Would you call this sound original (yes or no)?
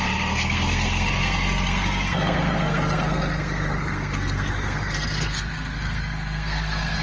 no